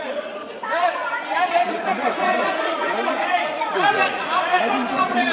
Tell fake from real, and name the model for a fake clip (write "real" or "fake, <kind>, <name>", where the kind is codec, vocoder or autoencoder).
fake, vocoder, Vocos